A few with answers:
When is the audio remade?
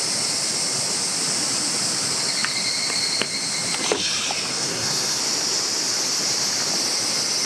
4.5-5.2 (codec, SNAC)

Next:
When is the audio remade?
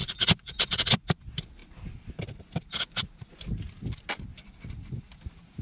0.0-0.9 (vocoder, Vocos)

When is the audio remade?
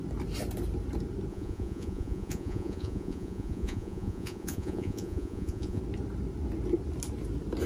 1.3-5.8 (vocoder, Vocos)